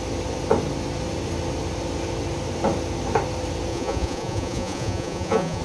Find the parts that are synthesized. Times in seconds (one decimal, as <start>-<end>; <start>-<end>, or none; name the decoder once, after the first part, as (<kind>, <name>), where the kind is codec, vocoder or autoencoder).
3.7-5.6 (vocoder, Vocos)